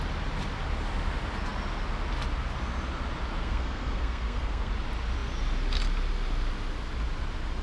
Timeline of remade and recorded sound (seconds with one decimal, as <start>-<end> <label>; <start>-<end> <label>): 0.0-3.4 recorded; 3.4-4.7 remade; 4.7-7.6 recorded